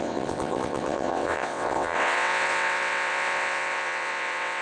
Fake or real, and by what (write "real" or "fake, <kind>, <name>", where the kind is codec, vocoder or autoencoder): fake, vocoder, WaveNeXt